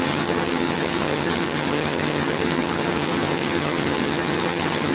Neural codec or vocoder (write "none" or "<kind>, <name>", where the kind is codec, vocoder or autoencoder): vocoder, HiFi-GAN